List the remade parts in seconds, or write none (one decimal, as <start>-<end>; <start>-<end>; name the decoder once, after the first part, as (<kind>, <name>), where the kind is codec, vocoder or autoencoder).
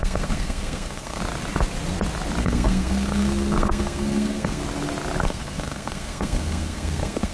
0.0-1.2 (codec, SNAC); 2.4-4.6; 5.2-7.3